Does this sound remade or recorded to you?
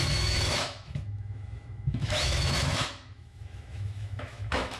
remade